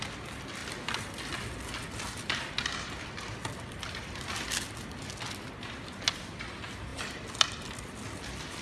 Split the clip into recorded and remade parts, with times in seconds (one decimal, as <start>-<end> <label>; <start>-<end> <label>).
0.0-8.6 recorded